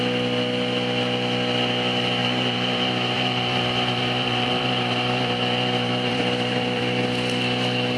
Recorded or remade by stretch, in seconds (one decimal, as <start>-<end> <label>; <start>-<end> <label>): 0.0-2.2 recorded; 2.2-6.8 remade; 6.8-8.0 recorded